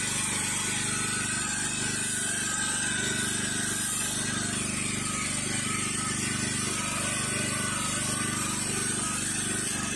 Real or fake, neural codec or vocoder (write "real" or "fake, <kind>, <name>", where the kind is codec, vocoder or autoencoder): real